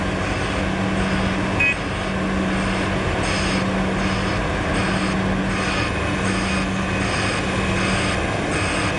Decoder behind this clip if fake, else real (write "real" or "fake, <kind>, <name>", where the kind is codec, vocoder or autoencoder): real